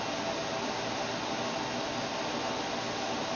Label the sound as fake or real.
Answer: real